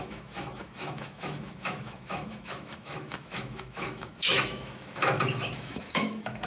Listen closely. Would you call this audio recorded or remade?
remade